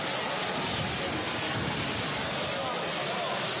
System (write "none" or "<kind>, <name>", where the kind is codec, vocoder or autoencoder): none